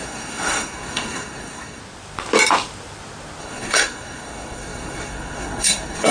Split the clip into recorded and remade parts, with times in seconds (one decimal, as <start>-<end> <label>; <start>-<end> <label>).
0.0-1.8 remade; 1.8-3.4 recorded; 3.4-6.1 remade